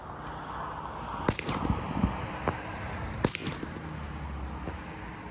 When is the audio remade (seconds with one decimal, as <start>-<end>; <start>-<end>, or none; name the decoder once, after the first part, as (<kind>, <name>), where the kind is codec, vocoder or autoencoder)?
none